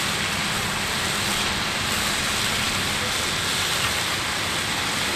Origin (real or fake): real